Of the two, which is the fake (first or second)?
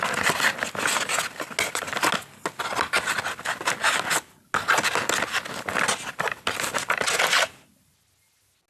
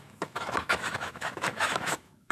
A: second